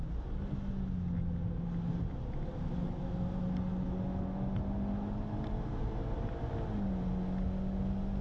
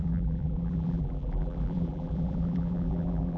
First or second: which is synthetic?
second